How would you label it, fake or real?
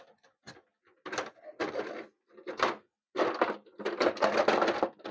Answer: real